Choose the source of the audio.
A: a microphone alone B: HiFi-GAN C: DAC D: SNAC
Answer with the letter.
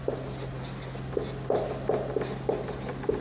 A